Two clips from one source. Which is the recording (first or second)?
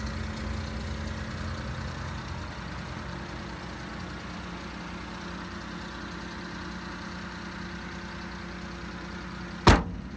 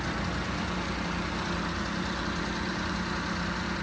first